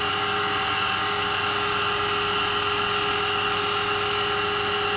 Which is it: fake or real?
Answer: real